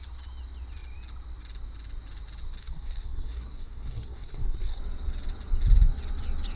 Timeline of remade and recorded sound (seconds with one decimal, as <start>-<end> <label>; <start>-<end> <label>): 0.0-2.6 recorded; 2.6-4.8 remade; 4.8-6.6 recorded